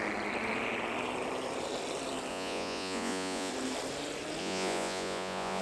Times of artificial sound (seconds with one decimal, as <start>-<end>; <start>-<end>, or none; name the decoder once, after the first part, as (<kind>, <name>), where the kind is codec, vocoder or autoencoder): 2.3-3.5 (vocoder, Vocos); 4.4-5.6